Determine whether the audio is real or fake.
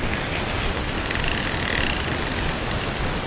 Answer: real